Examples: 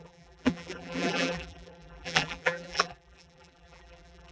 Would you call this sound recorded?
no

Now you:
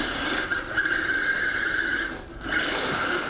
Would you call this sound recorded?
no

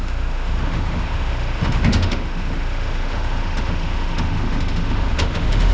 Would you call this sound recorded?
no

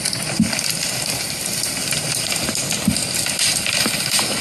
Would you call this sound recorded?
yes